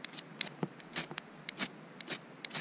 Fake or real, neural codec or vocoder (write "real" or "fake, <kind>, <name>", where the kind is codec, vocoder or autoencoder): real